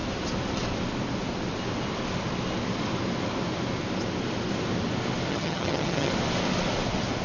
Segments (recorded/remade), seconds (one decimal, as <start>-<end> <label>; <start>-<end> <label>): 0.0-5.3 recorded; 5.3-6.1 remade; 6.1-7.2 recorded